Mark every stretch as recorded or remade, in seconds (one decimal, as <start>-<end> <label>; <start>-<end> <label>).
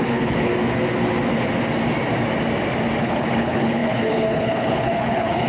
0.0-0.5 remade; 0.5-3.0 recorded; 3.0-5.5 remade